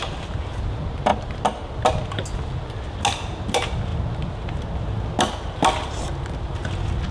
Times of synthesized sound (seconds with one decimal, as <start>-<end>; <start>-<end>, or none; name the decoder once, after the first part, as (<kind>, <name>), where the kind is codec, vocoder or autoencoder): none